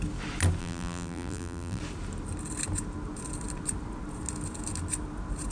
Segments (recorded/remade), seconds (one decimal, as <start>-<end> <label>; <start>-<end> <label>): 0.0-0.6 recorded; 0.6-1.8 remade; 1.8-5.5 recorded